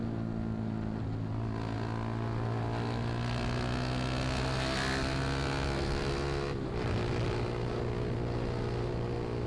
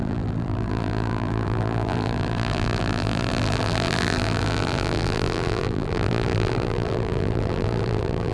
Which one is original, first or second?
first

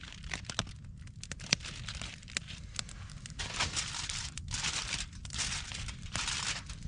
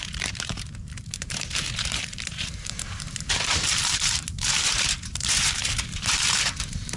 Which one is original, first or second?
first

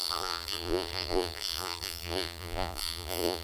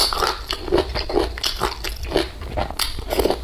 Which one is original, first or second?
second